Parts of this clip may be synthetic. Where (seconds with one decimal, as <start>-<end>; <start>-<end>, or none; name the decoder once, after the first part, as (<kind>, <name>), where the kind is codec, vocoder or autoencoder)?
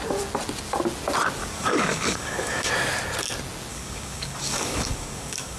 1.4-2.7 (codec, DAC); 3.7-5.6